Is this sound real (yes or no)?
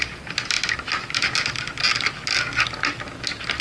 yes